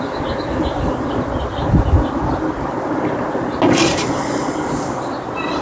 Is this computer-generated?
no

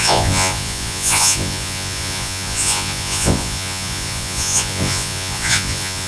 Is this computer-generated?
yes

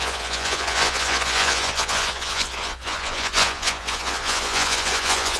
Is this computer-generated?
yes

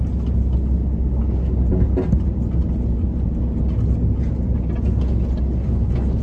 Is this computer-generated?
no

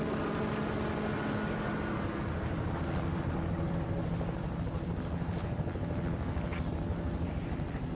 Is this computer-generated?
no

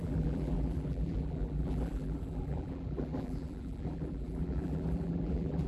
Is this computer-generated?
yes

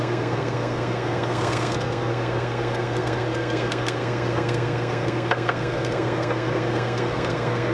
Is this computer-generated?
yes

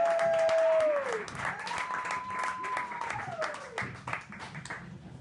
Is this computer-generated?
no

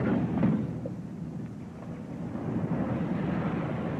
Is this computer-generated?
no